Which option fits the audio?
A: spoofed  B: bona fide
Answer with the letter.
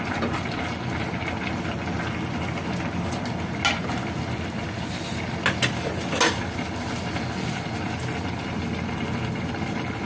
B